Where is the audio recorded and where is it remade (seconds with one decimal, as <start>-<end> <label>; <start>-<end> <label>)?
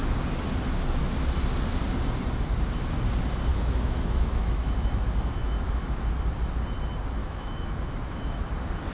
0.0-3.5 recorded; 3.5-5.0 remade; 5.0-5.4 recorded; 5.4-6.1 remade; 6.1-7.2 recorded; 7.2-8.4 remade; 8.4-8.9 recorded